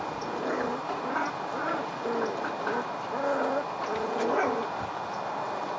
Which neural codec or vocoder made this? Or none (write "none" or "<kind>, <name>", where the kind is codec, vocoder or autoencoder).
none